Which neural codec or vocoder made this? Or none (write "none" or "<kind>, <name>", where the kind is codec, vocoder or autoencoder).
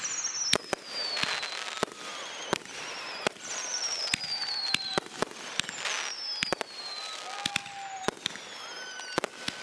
none